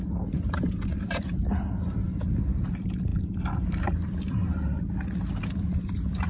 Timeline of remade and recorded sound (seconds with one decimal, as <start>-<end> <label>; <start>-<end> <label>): 0.0-6.3 recorded